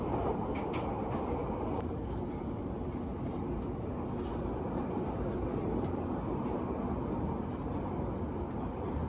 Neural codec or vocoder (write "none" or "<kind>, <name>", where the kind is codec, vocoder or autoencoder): none